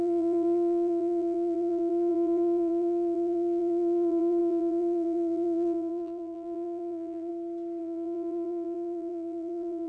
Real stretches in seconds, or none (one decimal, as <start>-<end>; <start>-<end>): 7.3-7.8